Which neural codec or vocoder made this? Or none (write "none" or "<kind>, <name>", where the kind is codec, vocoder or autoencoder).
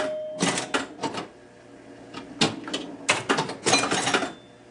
none